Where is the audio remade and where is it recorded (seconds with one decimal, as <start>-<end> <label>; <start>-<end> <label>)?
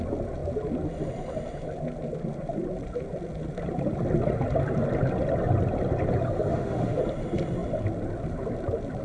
0.0-6.5 recorded; 6.5-7.0 remade; 7.0-9.0 recorded